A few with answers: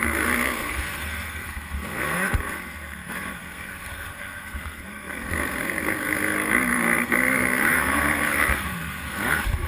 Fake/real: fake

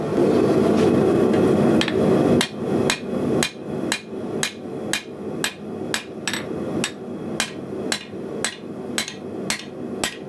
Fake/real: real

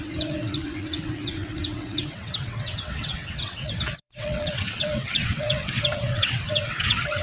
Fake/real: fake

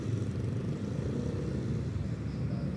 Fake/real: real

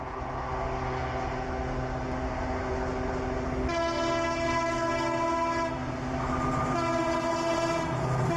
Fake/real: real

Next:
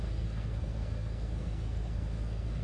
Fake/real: fake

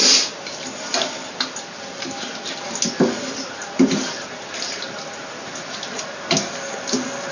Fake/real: real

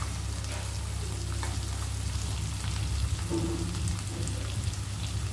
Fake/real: real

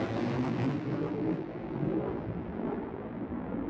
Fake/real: fake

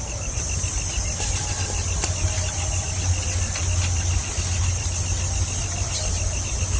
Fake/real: real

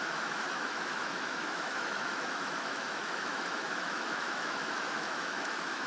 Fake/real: fake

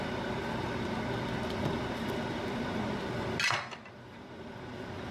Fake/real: real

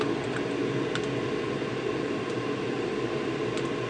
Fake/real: real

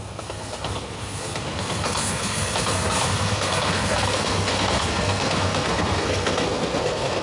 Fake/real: fake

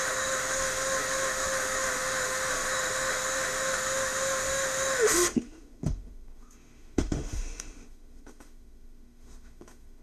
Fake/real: fake